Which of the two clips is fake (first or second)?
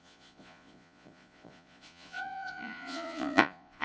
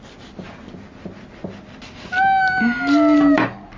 first